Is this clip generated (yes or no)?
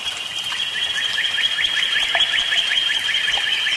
no